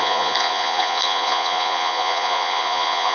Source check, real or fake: fake